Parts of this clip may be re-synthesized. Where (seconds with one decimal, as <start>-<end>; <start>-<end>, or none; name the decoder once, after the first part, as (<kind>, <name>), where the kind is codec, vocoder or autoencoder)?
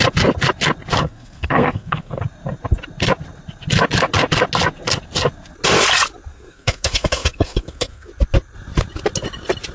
1.0-2.2 (codec, SNAC); 6.3-8.1